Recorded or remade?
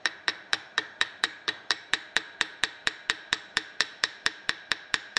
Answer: remade